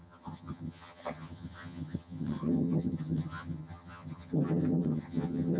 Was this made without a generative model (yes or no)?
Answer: no